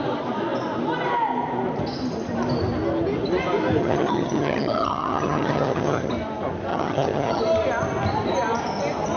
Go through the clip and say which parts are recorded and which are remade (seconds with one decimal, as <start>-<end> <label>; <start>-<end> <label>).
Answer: 0.0-3.8 recorded; 3.8-6.1 remade; 6.1-6.7 recorded; 6.7-7.4 remade; 7.4-9.2 recorded